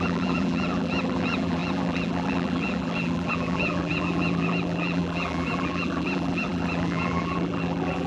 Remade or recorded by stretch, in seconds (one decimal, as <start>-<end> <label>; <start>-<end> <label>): 0.0-8.1 remade